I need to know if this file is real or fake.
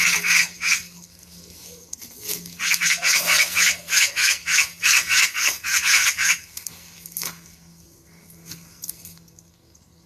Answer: fake